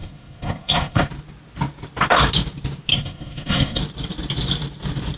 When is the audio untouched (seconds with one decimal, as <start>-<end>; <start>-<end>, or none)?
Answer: 1.1-2.9; 3.8-5.2